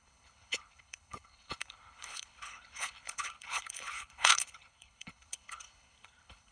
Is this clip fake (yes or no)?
yes